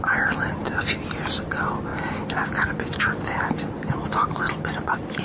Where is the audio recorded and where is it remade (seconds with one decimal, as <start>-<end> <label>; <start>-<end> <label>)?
0.0-5.2 recorded